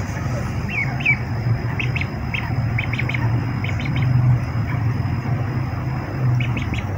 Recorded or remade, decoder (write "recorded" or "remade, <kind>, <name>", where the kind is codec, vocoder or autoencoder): remade, vocoder, BigVGAN v2